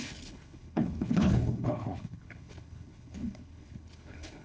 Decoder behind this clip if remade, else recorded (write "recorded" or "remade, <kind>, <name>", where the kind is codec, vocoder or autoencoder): remade, codec, HILCodec